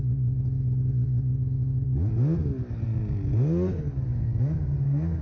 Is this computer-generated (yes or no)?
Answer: no